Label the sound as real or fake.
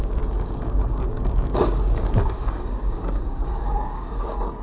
fake